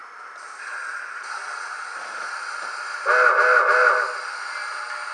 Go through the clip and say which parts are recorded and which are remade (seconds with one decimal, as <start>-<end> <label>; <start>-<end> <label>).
0.0-5.1 recorded